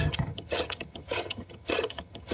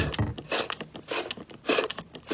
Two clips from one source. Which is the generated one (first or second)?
first